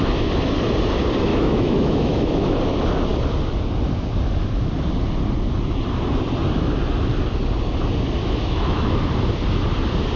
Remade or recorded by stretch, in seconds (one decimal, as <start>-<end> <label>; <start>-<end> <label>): 0.0-1.3 recorded; 1.3-2.5 remade; 2.5-8.2 recorded; 8.2-8.9 remade; 8.9-10.2 recorded